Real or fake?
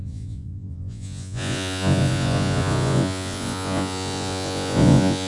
fake